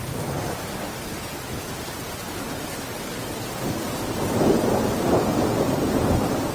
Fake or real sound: real